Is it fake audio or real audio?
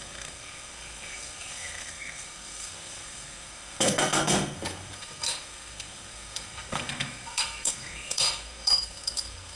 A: fake